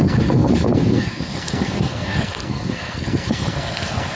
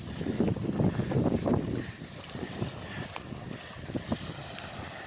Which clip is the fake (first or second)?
first